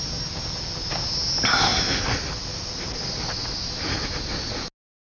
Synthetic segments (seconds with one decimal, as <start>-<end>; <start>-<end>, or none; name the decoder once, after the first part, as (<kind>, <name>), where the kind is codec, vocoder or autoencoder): none